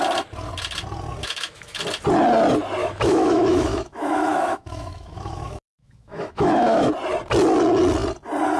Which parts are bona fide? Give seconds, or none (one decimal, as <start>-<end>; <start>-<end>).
0.0-1.2; 1.8-2.8; 6.9-8.6